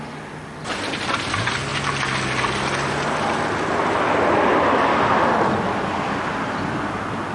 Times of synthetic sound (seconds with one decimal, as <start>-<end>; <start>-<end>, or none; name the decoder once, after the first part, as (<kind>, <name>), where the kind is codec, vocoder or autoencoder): none